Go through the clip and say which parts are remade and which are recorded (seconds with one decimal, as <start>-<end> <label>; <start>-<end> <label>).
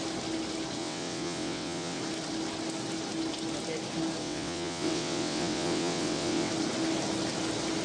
0.0-0.8 recorded; 0.8-2.0 remade; 2.0-4.2 recorded; 4.2-6.5 remade; 6.5-7.8 recorded